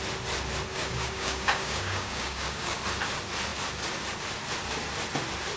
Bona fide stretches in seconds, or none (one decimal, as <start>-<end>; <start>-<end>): 0.0-0.7; 2.8-5.6